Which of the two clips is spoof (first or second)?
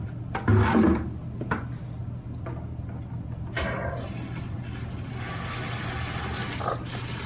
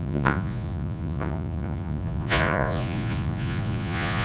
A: second